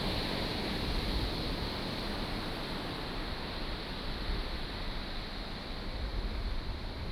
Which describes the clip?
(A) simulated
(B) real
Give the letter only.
B